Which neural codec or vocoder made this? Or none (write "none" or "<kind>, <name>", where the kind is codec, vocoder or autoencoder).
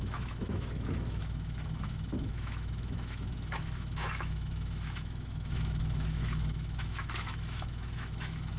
autoencoder, DAC-VAE